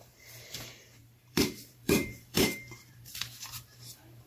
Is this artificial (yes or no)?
yes